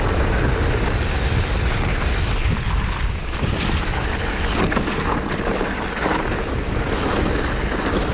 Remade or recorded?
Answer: recorded